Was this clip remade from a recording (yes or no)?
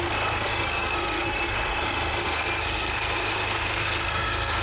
yes